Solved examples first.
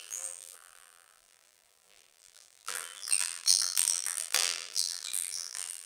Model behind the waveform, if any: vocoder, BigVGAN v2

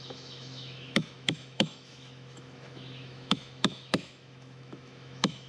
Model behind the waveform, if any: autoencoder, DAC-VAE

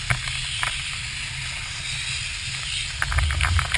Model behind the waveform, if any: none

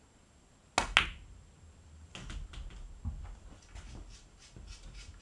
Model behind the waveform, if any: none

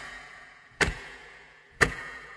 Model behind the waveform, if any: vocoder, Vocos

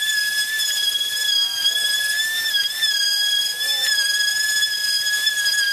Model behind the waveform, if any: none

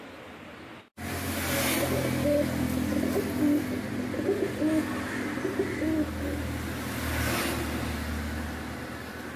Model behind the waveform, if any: none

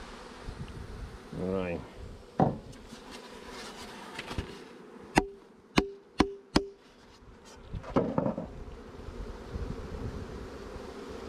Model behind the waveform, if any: none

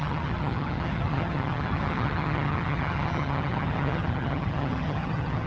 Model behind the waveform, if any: vocoder, HiFi-GAN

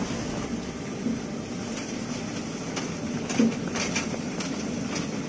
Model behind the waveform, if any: none